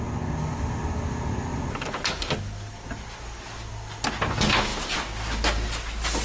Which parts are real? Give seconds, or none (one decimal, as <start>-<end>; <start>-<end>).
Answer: 0.0-6.2